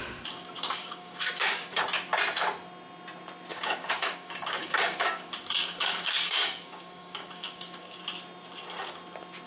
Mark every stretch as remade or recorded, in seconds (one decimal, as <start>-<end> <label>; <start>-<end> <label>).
0.0-0.8 recorded; 0.8-1.8 remade; 1.8-3.5 recorded; 3.5-8.0 remade; 8.0-9.5 recorded